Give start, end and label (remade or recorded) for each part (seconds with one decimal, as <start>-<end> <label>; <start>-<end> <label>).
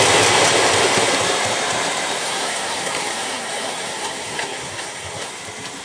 0.0-2.2 recorded; 2.2-5.3 remade; 5.3-5.8 recorded